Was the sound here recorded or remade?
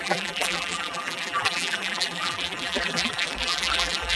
remade